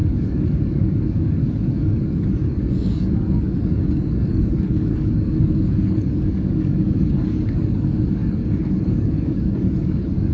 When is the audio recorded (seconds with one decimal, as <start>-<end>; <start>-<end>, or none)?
none